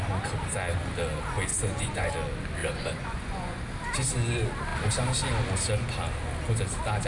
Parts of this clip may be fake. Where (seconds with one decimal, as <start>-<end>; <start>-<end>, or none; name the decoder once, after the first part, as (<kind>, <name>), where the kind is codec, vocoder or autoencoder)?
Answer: 1.5-2.1 (vocoder, Vocos); 2.6-3.6